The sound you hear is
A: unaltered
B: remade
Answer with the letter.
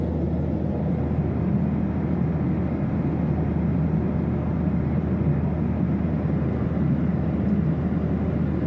A